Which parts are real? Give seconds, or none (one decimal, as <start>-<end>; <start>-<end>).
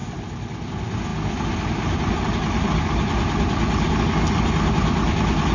0.7-5.5